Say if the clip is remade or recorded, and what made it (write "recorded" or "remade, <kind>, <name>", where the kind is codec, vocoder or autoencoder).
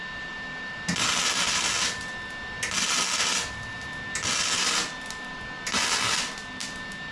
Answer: recorded